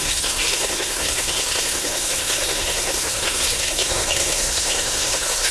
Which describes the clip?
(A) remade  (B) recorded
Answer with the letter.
A